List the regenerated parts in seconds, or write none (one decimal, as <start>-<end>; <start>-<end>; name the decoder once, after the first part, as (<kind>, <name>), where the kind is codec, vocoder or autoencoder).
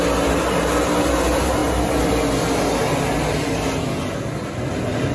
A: none